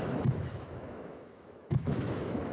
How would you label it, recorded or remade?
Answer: remade